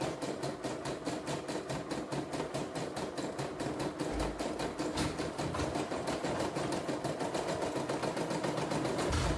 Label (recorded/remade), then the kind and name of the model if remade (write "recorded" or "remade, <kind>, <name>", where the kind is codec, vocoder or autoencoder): recorded